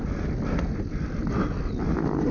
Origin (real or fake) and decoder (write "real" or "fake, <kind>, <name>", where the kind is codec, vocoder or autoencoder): real